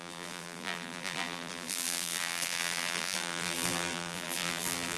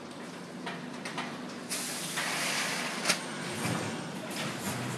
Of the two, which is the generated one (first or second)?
first